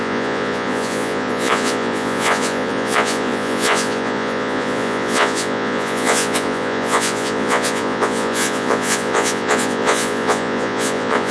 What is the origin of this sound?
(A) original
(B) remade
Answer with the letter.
B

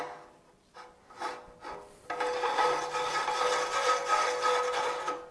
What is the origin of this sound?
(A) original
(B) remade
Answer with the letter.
A